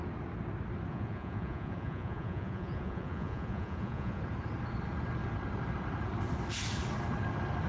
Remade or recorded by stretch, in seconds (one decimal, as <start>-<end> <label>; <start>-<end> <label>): 0.0-0.9 recorded; 0.9-4.2 remade; 4.2-7.7 recorded